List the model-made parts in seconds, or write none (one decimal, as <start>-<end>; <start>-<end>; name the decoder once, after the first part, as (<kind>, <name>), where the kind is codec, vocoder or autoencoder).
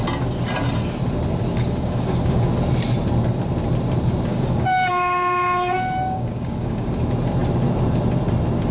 1.5-2.5 (codec, DAC); 4.3-6.9